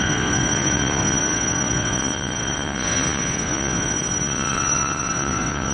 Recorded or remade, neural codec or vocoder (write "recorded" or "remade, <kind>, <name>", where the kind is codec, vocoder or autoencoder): remade, vocoder, WaveNeXt